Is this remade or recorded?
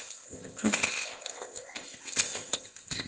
remade